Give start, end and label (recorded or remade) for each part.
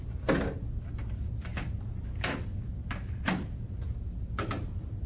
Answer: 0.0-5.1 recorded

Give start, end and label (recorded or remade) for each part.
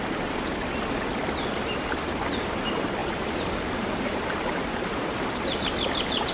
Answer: 0.0-3.0 recorded; 3.0-5.6 remade; 5.6-6.3 recorded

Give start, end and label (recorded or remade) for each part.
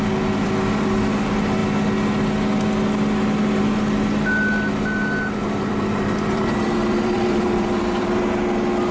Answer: 0.0-5.4 recorded; 5.4-8.3 remade; 8.3-8.9 recorded